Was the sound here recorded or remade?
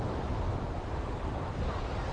recorded